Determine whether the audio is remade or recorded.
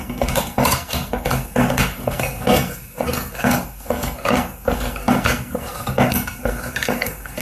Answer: remade